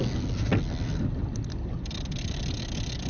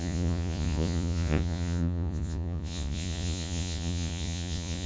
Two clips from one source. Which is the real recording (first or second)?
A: first